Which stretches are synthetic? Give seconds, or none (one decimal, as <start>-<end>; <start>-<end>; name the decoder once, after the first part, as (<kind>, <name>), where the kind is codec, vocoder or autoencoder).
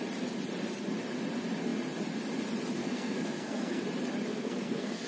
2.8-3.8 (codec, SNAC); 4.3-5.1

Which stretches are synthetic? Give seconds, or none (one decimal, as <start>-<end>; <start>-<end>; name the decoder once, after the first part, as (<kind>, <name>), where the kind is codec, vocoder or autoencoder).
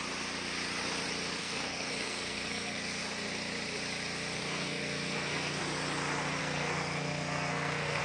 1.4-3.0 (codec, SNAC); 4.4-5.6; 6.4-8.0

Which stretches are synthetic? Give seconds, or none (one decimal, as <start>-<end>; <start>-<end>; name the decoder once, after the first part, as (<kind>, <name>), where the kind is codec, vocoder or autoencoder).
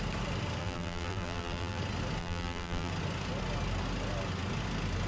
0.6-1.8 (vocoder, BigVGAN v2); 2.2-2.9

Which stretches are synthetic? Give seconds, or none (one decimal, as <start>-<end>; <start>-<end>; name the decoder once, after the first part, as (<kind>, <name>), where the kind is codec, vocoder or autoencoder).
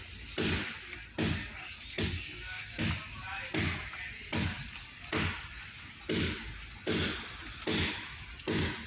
2.1-2.9 (codec, DAC)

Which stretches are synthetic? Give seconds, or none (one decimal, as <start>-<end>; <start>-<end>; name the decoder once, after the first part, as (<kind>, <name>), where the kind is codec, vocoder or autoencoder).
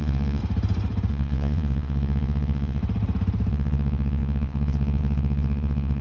0.0-0.4 (vocoder, Vocos); 1.1-2.8; 3.5-6.0